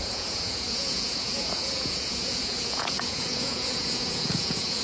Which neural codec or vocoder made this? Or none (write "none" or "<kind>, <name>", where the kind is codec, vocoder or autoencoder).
vocoder, Vocos